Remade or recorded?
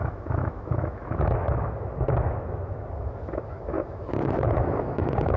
remade